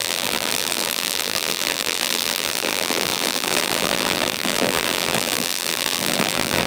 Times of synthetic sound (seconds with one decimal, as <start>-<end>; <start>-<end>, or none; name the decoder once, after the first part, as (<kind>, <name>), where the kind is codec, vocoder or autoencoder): 0.0-6.7 (vocoder, BigVGAN v2)